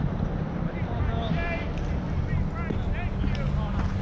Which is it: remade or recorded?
recorded